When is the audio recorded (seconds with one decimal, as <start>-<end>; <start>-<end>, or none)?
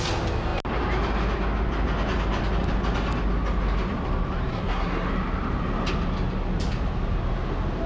0.0-4.5; 5.1-7.9